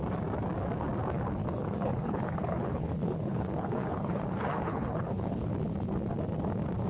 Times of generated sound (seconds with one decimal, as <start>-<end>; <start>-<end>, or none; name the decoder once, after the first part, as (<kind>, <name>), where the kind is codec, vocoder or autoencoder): 1.4-5.5 (codec, HILCodec)